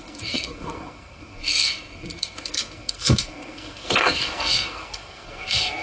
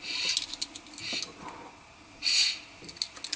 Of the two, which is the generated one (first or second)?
first